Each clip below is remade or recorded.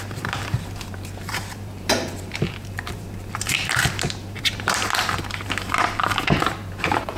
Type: remade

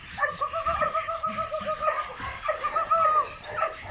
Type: recorded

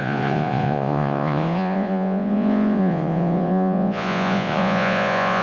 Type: remade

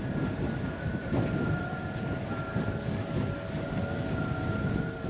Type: recorded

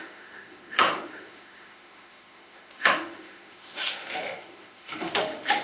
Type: remade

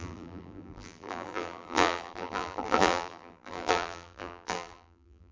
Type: remade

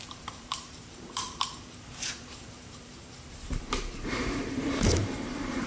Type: remade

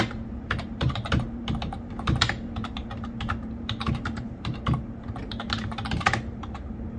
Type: remade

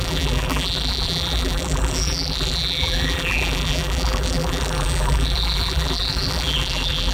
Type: remade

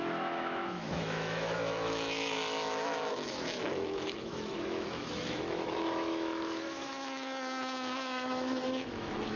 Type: remade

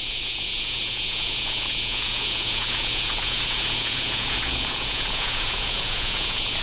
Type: remade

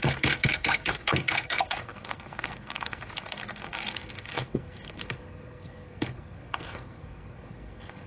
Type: remade